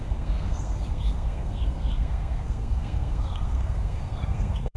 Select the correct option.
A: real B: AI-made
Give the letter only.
B